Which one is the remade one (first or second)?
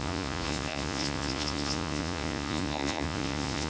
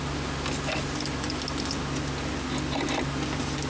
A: first